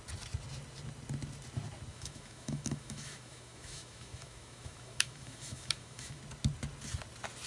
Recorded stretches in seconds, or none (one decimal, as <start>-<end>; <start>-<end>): 0.0-1.9; 6.2-7.5